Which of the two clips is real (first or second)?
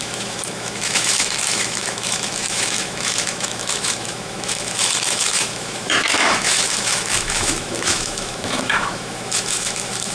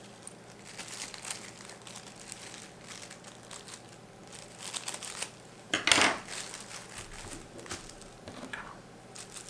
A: second